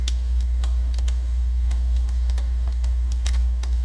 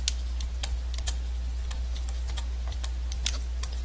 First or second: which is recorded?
second